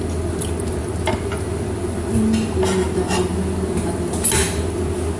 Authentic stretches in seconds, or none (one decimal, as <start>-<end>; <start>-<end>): 0.0-5.2